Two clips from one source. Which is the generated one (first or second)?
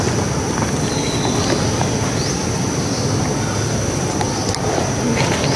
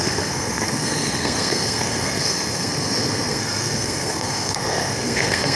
second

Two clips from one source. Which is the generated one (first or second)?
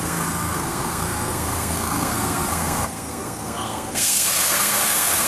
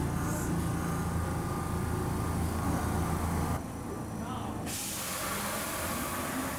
first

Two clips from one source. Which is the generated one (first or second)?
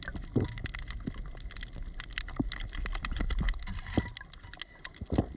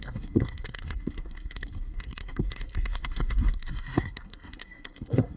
second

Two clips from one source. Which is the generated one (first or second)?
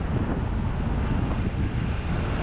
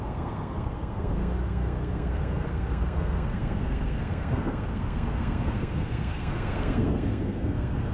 second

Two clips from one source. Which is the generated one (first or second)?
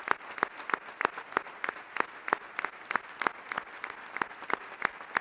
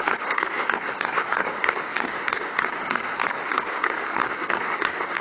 second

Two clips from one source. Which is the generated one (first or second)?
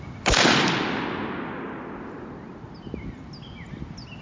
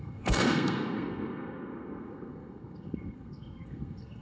second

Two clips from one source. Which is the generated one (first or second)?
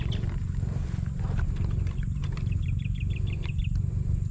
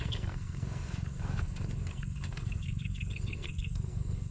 second